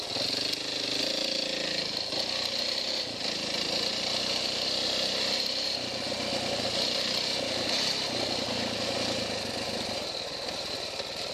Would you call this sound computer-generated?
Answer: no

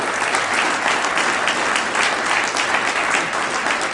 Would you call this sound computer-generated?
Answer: no